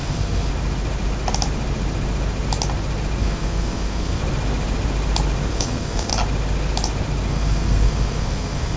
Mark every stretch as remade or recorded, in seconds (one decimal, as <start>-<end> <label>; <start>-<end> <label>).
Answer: 0.0-0.5 remade; 0.5-3.2 recorded; 3.2-4.2 remade; 4.2-5.5 recorded; 5.5-6.1 remade; 6.1-7.3 recorded; 7.3-8.8 remade